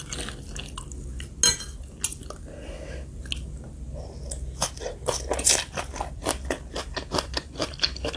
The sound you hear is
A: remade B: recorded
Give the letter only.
B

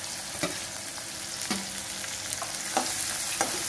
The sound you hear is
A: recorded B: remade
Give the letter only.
A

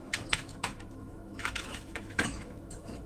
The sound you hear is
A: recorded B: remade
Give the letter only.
B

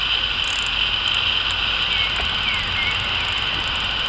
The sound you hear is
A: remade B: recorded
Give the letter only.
B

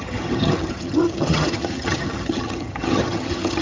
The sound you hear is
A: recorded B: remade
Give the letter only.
B